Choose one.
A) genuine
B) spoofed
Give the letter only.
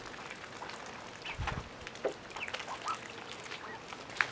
A